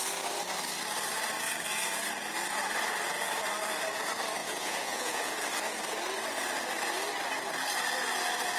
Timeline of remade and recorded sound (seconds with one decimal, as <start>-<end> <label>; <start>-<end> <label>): 0.0-4.4 recorded; 4.4-5.3 remade; 5.3-8.6 recorded